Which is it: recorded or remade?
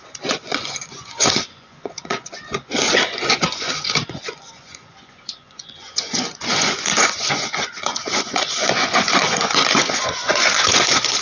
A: remade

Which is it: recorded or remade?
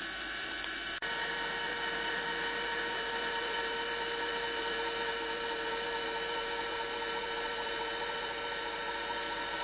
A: remade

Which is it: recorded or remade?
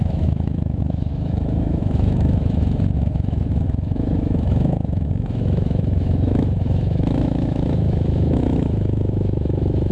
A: remade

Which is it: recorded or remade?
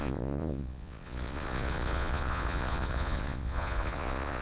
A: remade